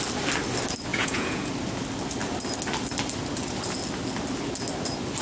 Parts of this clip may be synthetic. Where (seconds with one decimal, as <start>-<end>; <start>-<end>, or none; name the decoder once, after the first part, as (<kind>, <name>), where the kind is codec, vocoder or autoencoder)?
0.9-1.5 (vocoder, Vocos)